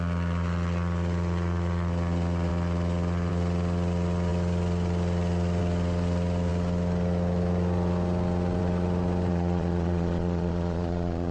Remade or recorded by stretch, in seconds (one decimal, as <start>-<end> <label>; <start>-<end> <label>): 0.0-9.3 recorded; 9.3-11.3 remade